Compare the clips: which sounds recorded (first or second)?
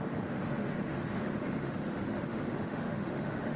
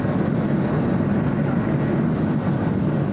second